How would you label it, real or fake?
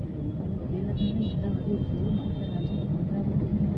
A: real